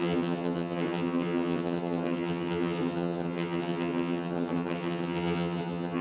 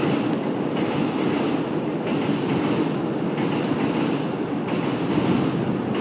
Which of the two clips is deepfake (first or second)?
first